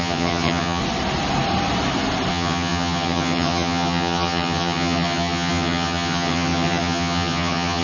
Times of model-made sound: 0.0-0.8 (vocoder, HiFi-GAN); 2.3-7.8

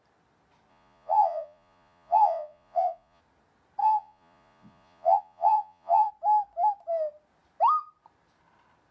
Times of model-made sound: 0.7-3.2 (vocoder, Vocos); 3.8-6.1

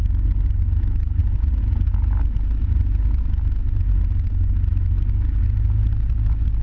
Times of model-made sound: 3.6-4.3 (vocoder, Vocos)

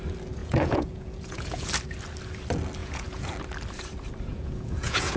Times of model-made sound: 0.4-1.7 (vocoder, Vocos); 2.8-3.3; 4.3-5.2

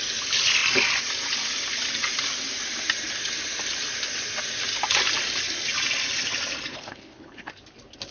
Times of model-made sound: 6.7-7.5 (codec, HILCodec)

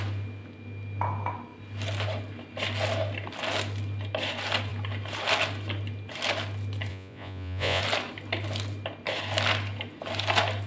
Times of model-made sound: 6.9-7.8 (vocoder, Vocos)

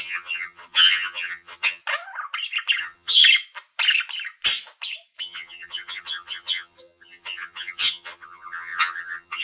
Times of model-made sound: 0.0-1.8 (vocoder, HiFi-GAN); 2.8-3.2; 5.2-9.4